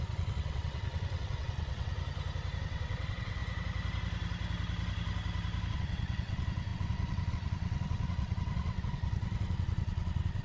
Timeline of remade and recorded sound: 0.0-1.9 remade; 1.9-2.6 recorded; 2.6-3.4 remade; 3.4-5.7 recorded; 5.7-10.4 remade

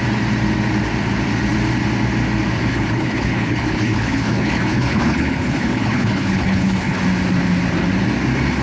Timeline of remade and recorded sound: 0.0-2.7 recorded; 2.7-7.0 remade; 7.0-8.6 recorded